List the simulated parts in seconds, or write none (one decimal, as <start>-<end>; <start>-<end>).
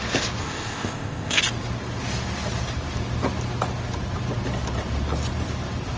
0.4-1.4